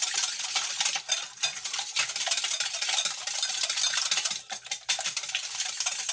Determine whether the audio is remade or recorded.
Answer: recorded